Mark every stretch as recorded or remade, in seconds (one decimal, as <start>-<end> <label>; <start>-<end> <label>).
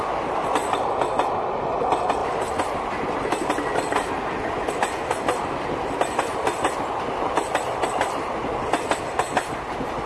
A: 0.0-10.1 recorded